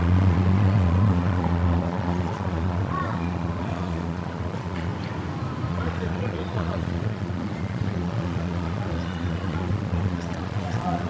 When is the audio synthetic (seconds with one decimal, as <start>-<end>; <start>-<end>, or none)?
0.0-4.9; 5.7-11.1